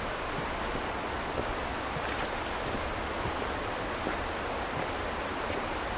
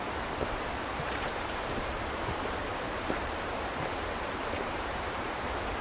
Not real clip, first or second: second